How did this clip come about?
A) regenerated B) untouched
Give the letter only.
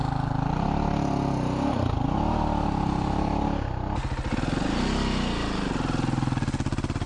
B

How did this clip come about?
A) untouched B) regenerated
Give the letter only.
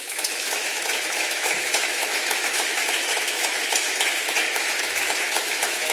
B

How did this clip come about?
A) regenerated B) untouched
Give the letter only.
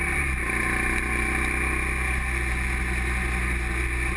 B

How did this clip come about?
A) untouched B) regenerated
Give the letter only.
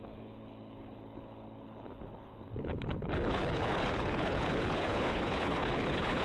B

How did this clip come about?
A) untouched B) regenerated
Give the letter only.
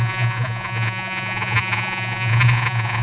B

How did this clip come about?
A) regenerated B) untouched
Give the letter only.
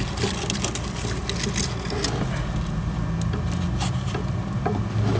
B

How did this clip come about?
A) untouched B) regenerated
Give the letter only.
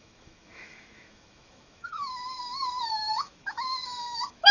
B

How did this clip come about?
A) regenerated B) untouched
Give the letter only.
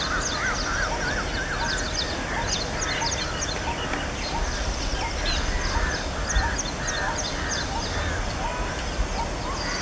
B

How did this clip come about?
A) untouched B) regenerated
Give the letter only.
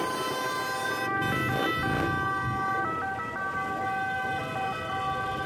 A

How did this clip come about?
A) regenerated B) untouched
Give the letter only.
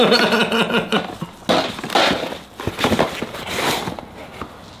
B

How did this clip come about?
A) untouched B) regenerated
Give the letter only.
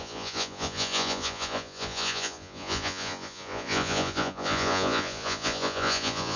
B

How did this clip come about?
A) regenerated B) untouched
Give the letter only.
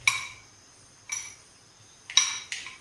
B